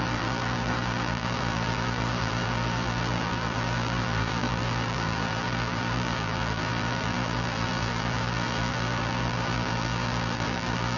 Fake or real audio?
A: fake